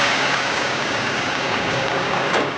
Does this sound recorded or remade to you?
remade